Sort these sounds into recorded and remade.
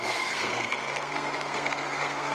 remade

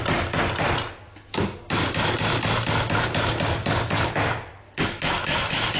recorded